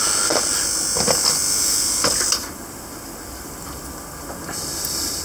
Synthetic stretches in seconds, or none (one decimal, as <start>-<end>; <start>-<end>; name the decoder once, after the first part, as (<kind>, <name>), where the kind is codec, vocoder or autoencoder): none

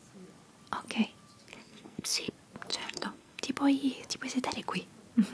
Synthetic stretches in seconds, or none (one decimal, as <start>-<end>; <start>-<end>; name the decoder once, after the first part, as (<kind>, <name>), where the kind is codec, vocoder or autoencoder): 1.5-2.3 (codec, SNAC); 2.7-3.4

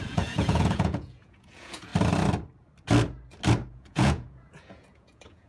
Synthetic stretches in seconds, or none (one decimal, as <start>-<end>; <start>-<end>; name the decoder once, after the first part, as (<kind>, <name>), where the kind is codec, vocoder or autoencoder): 0.0-1.9 (vocoder, Vocos); 3.7-5.5

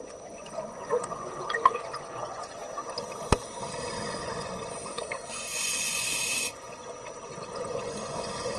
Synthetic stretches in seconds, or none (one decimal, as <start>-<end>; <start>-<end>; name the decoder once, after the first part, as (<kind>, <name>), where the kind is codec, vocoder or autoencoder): 0.0-2.6 (vocoder, Vocos); 4.1-6.8; 7.4-8.6

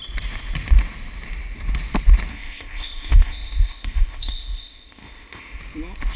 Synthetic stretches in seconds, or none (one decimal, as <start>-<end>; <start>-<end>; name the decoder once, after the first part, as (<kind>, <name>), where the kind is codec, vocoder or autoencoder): 2.3-5.6 (codec, ZipCodec)

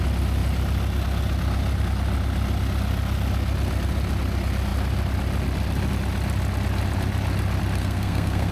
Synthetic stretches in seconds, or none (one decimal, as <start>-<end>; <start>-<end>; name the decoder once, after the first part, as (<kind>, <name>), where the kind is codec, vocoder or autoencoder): 7.8-8.5 (codec, SNAC)

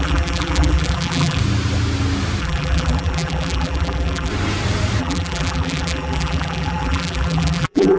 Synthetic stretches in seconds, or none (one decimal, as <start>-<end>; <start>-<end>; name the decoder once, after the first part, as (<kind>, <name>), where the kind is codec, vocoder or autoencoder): 0.0-1.4 (vocoder, BigVGAN v2); 2.4-4.3; 5.0-8.0

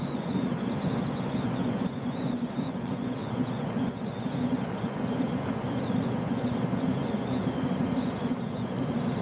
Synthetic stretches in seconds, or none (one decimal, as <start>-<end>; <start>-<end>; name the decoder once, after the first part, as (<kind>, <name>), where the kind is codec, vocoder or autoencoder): 0.0-9.2 (vocoder, Vocos)